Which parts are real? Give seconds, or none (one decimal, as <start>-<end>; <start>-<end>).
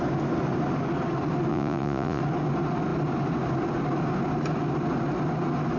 0.0-1.5; 2.2-5.8